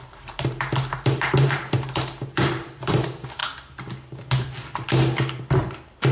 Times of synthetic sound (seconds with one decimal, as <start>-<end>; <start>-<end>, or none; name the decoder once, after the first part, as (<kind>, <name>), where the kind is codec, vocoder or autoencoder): 0.0-3.4 (vocoder, BigVGAN v2)